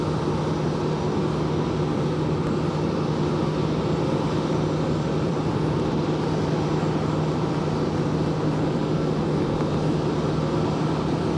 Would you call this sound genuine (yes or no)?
yes